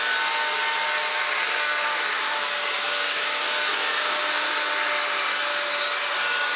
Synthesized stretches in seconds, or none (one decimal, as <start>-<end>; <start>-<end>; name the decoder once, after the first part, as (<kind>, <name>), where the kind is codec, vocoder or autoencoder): 1.1-4.2 (codec, DAC); 5.5-6.6